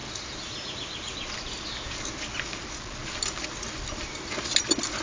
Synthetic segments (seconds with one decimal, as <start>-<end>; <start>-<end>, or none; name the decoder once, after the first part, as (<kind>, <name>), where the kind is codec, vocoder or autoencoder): none